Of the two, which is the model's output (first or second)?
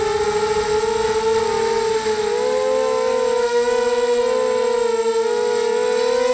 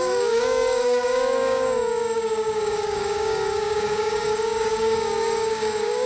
second